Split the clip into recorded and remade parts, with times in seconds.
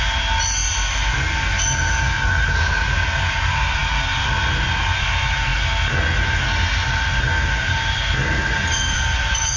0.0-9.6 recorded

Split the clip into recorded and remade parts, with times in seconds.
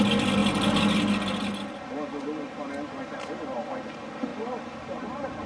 0.0-5.5 recorded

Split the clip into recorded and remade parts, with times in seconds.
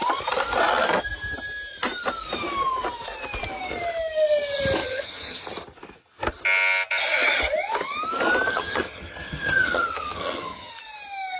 0.0-4.8 recorded; 4.8-5.4 remade; 5.4-8.5 recorded; 8.5-10.7 remade; 10.7-11.4 recorded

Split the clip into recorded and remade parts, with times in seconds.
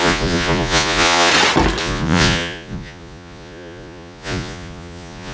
0.0-1.3 remade; 1.3-1.8 recorded; 1.8-5.3 remade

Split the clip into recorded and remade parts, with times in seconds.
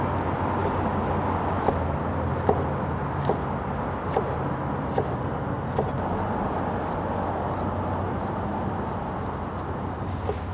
0.0-10.5 recorded